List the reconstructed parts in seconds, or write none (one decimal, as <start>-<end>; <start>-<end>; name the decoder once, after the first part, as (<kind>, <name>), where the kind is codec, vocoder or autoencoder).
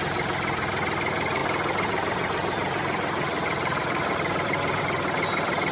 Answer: 1.4-4.8 (vocoder, BigVGAN v2)